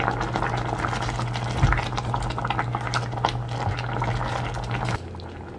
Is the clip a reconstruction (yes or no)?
no